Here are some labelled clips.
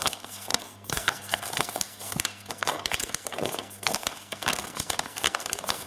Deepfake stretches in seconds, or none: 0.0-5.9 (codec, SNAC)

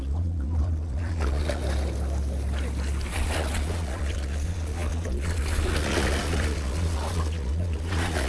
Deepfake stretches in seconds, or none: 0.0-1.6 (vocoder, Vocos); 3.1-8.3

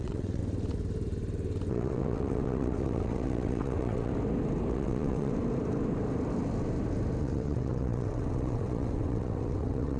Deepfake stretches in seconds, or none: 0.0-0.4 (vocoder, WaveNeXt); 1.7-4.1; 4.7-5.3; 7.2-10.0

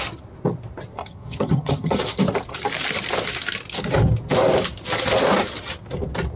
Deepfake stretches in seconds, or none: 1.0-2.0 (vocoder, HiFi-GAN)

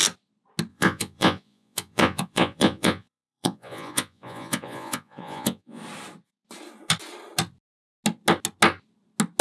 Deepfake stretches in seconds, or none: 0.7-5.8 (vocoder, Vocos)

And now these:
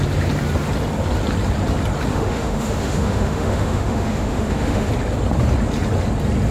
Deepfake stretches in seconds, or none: 2.1-4.9 (autoencoder, DAC-VAE)